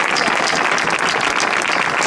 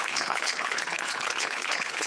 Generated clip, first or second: second